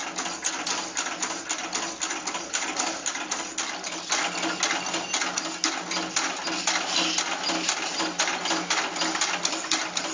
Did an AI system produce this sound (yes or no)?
no